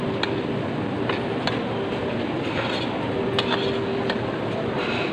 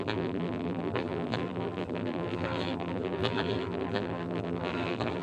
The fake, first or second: second